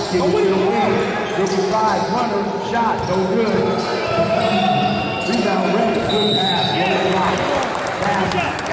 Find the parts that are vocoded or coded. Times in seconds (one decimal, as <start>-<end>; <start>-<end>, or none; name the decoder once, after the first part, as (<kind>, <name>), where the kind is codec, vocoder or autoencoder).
none